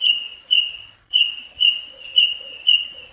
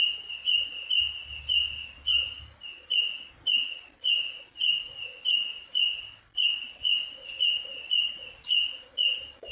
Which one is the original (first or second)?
second